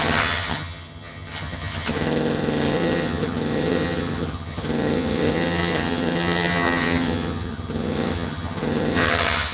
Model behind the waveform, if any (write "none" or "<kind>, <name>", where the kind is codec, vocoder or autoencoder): vocoder, HiFi-GAN